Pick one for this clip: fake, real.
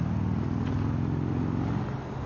real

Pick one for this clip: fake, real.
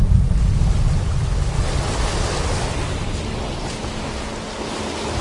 real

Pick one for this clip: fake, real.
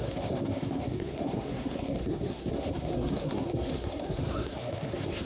fake